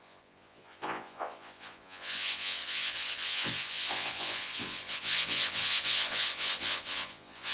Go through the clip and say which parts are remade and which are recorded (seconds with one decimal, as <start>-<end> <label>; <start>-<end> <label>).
0.0-7.5 remade